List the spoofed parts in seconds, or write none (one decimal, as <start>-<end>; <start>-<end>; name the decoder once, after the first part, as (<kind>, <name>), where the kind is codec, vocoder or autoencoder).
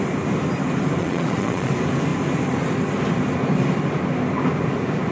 1.0-1.7 (vocoder, Vocos)